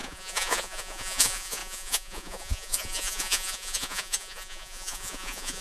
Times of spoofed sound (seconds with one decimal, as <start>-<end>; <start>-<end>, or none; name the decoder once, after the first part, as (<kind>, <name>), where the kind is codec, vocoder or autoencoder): 0.0-5.6 (vocoder, Vocos)